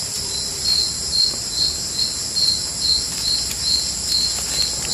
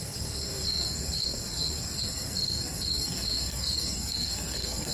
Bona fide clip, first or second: first